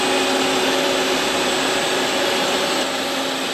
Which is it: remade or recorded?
recorded